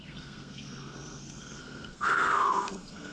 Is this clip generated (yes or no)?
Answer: yes